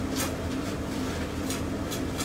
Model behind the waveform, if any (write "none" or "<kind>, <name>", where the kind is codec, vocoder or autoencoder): none